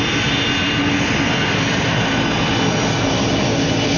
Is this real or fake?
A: real